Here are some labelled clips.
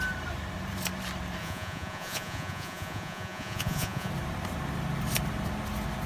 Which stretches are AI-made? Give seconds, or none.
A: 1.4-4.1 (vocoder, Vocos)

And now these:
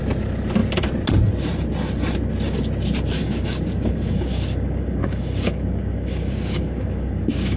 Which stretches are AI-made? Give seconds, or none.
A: 3.2-7.6 (codec, DAC)

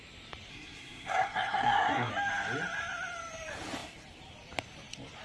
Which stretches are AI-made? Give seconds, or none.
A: 0.5-2.1 (codec, SNAC)

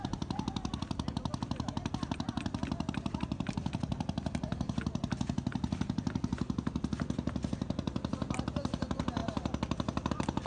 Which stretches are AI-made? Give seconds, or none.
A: none